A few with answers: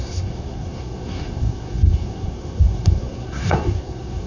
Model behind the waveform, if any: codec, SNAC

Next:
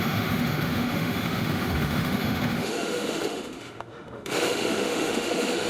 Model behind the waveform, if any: autoencoder, DAC-VAE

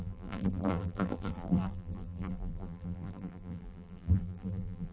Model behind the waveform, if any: vocoder, BigVGAN v2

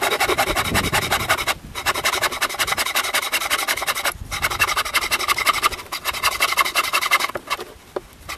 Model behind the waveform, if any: vocoder, BigVGAN v2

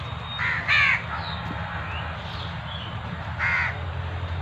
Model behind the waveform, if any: none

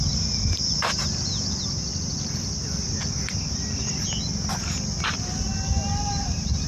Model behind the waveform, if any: none